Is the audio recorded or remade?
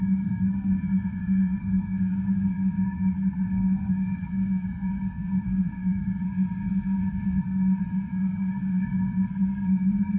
remade